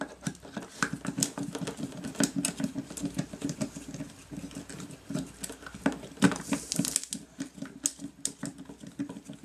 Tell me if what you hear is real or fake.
real